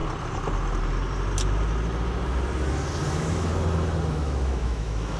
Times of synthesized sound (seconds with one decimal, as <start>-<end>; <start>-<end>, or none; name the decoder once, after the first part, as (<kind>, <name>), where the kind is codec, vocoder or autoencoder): 3.1-3.5 (autoencoder, DAC-VAE); 4.1-5.2